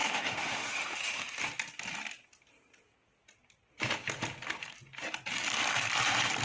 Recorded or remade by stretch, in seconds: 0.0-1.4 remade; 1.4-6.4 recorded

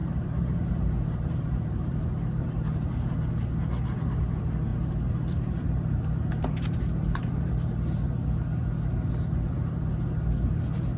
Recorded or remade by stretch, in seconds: 0.0-3.3 remade; 3.3-4.7 recorded; 4.7-7.5 remade; 7.5-11.0 recorded

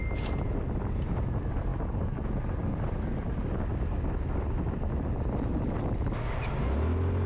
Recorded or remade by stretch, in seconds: 0.0-7.3 recorded

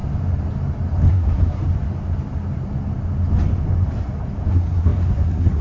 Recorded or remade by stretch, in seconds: 0.0-1.1 recorded; 1.1-1.6 remade; 1.6-4.5 recorded; 4.5-5.6 remade

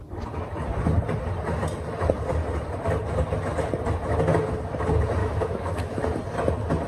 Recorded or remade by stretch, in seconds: 0.0-5.2 recorded; 5.2-6.0 remade; 6.0-6.9 recorded

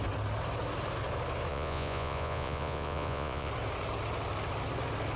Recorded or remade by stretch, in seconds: 0.0-1.5 recorded; 1.5-3.5 remade; 3.5-5.2 recorded